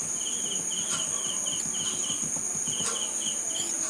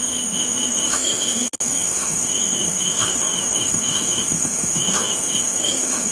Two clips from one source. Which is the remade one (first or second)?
second